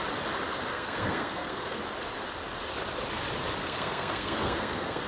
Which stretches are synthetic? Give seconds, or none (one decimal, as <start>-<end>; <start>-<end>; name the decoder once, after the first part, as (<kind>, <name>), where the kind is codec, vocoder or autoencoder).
0.7-1.8 (codec, SNAC); 3.6-5.1